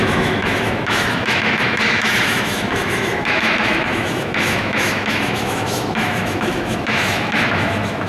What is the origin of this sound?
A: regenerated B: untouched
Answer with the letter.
A